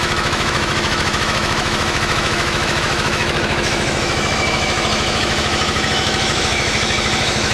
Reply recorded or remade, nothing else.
remade